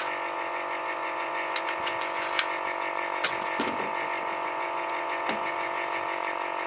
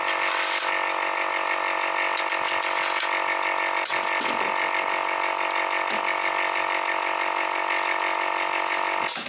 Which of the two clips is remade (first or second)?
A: first